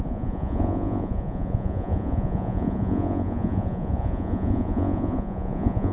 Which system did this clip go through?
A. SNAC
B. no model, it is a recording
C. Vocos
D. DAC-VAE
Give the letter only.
C